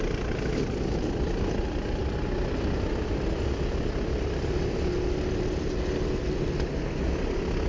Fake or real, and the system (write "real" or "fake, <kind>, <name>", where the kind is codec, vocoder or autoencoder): real